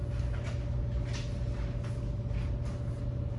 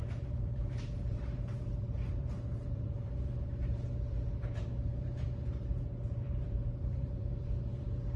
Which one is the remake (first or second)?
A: second